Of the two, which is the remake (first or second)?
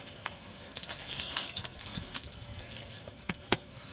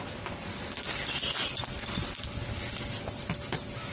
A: first